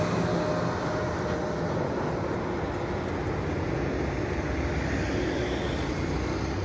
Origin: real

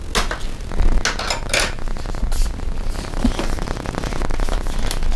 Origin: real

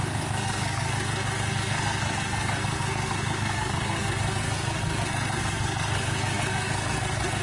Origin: fake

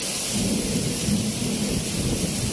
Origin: real